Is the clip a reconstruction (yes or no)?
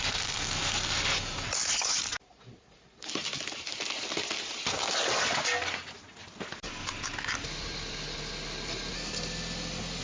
no